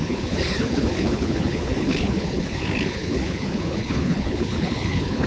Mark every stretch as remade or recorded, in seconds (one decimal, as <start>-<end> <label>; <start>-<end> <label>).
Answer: 0.0-5.3 remade